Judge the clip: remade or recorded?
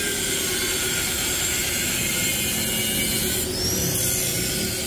recorded